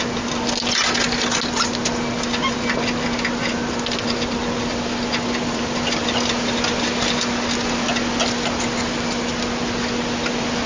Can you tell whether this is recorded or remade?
recorded